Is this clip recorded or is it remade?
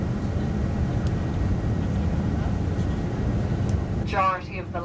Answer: recorded